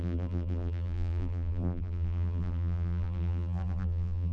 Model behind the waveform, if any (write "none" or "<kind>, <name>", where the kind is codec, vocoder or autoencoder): vocoder, BigVGAN v2